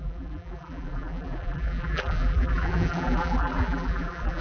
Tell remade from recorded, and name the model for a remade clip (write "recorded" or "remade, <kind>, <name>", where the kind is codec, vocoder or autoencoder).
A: remade, vocoder, BigVGAN v2